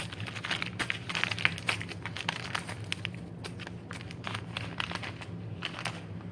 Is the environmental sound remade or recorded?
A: recorded